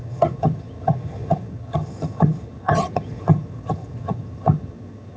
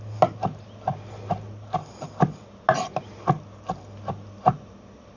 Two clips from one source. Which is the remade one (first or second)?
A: first